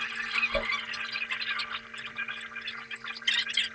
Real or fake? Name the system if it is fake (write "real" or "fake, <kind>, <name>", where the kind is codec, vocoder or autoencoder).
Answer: real